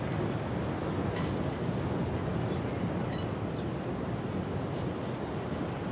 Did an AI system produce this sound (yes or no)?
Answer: no